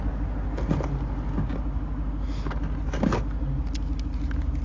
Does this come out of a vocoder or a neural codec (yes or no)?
no